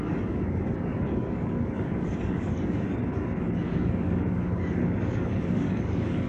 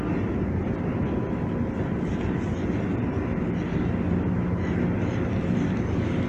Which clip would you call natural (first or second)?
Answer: second